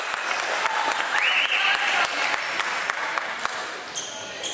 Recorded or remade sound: recorded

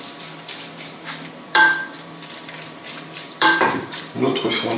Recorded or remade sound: remade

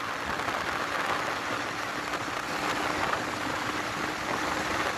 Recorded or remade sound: recorded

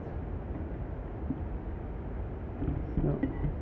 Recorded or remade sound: recorded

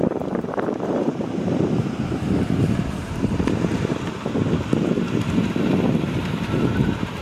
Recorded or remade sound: remade